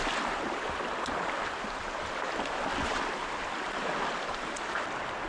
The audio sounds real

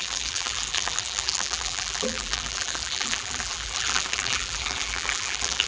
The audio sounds fake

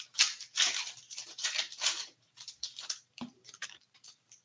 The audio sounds fake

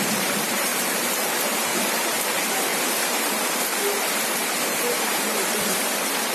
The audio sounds fake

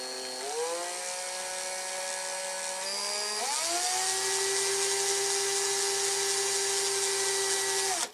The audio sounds real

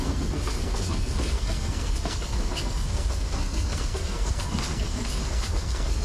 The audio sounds fake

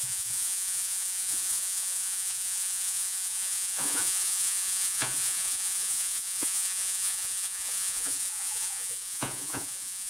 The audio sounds fake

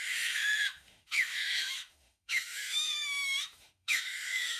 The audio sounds fake